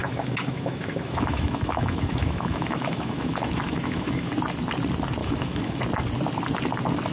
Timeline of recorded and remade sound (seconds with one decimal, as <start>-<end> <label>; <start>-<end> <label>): 0.0-4.3 remade; 4.3-5.2 recorded; 5.2-5.8 remade; 5.8-7.1 recorded